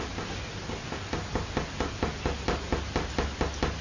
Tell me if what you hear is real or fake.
real